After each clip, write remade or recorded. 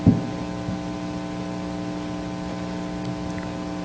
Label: recorded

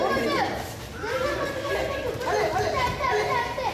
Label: recorded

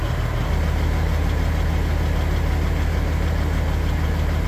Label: recorded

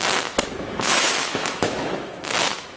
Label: remade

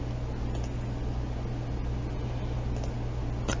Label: recorded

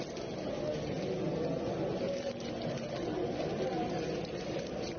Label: recorded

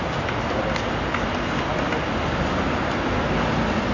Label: recorded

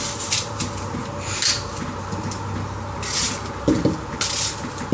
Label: recorded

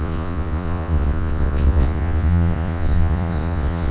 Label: remade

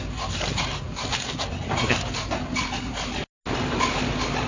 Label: recorded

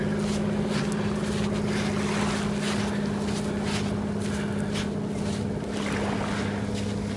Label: recorded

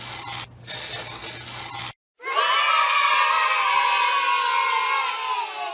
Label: recorded